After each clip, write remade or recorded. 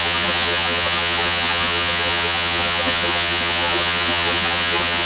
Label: remade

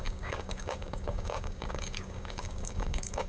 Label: remade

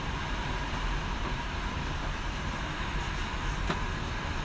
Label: recorded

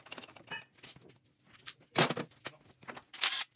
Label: recorded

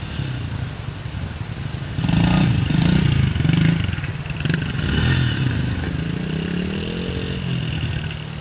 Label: recorded